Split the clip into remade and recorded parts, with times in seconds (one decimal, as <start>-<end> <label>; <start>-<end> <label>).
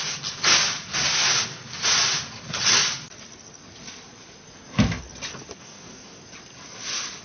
0.0-5.6 recorded; 5.6-6.2 remade; 6.2-7.2 recorded